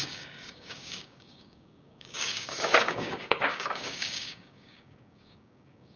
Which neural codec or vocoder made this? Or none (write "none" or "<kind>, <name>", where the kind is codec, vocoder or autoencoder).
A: codec, DAC